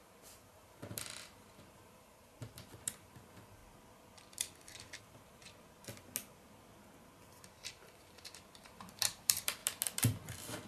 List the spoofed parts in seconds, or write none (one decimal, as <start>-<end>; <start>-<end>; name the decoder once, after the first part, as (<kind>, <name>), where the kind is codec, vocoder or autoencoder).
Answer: 0.0-3.6 (vocoder, BigVGAN v2); 5.0-5.4; 7.7-9.6